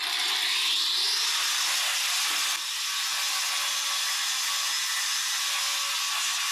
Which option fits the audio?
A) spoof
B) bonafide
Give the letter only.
B